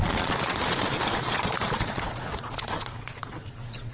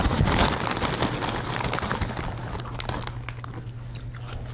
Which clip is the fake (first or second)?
first